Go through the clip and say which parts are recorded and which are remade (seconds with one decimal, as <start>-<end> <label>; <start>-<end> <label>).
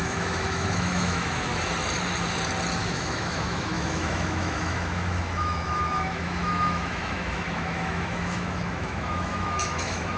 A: 0.0-1.5 remade; 1.5-2.8 recorded; 2.8-10.2 remade